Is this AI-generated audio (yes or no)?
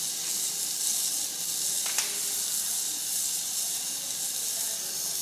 no